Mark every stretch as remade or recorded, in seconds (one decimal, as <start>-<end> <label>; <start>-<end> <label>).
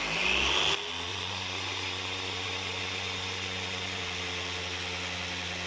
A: 0.0-1.1 recorded; 1.1-4.0 remade; 4.0-5.7 recorded